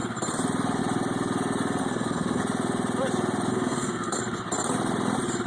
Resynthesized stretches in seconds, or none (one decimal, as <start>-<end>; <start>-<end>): 1.8-2.4; 3.5-4.2